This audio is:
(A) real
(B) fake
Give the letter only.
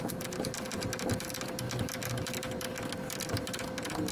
A